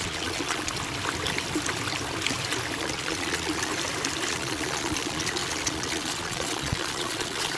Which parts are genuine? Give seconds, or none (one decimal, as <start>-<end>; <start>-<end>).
0.7-2.8; 3.7-4.3